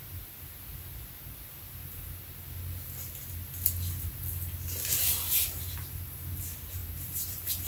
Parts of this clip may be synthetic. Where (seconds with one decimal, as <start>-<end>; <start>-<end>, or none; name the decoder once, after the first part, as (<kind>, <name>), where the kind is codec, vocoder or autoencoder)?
6.8-7.7 (vocoder, BigVGAN v2)